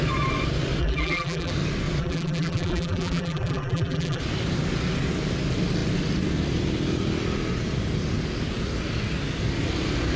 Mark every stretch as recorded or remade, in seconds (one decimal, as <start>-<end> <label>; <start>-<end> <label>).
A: 0.0-0.8 recorded; 0.8-1.5 remade; 1.5-2.0 recorded; 2.0-4.2 remade; 4.2-10.2 recorded